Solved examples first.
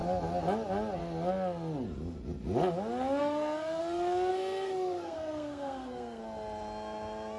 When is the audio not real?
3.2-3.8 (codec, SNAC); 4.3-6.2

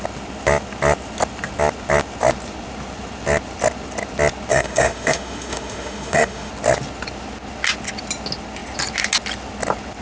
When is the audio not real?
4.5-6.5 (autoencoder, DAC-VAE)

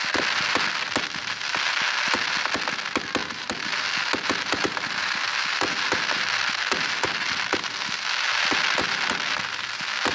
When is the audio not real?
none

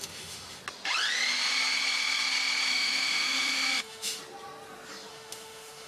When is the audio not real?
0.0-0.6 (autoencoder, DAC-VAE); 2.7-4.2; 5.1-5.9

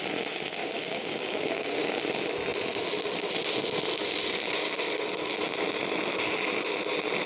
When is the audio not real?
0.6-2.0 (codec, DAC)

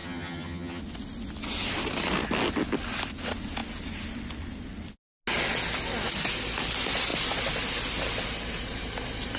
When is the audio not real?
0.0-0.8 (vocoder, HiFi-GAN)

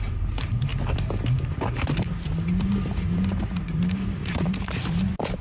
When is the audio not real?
0.0-0.7 (vocoder, BigVGAN v2); 1.7-5.4

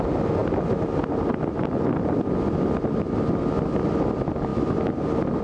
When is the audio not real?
none